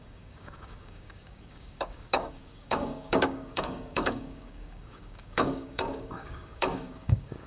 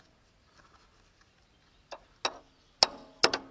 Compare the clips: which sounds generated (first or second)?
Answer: first